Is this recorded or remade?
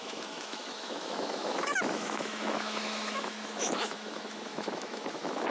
remade